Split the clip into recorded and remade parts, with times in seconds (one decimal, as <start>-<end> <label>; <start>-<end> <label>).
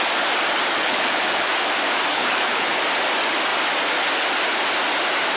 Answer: 0.0-0.7 recorded; 0.7-1.5 remade; 1.5-2.1 recorded; 2.1-2.8 remade; 2.8-5.4 recorded